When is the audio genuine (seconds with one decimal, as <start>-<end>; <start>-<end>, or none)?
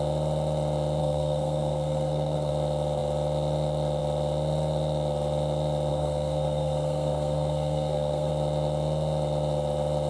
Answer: 0.0-1.0; 2.5-5.9; 8.3-10.1